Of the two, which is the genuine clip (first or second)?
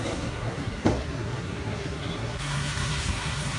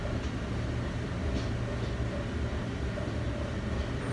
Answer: second